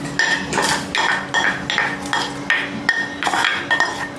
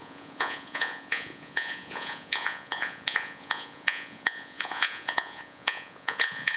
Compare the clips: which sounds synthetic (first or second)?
second